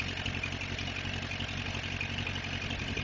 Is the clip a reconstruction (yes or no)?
no